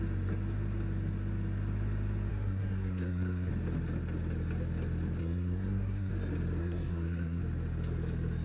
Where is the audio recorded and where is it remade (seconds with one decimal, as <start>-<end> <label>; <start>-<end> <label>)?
0.0-2.3 recorded; 2.3-3.5 remade; 3.5-5.2 recorded; 5.2-6.1 remade; 6.1-6.6 recorded; 6.6-7.4 remade; 7.4-8.4 recorded